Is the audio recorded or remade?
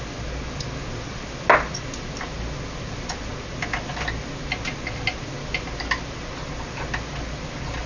recorded